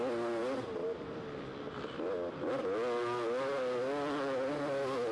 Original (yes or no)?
yes